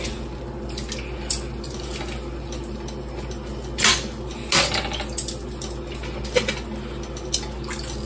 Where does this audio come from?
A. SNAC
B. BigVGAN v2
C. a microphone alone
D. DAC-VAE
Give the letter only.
C